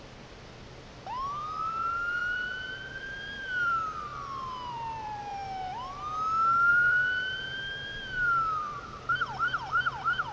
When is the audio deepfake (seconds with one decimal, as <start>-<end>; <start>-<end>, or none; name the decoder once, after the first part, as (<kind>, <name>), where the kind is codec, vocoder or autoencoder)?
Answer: 0.0-4.1 (vocoder, BigVGAN v2); 4.7-5.4; 6.7-10.3